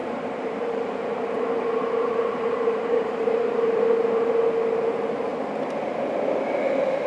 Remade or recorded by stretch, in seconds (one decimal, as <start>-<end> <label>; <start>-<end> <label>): 0.0-3.8 remade; 3.8-7.1 recorded